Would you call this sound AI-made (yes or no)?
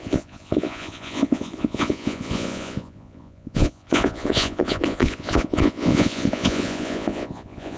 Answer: yes